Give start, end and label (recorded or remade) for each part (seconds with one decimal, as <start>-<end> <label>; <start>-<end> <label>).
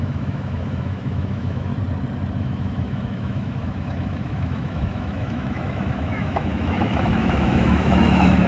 0.0-1.7 remade; 1.7-2.4 recorded; 2.4-8.5 remade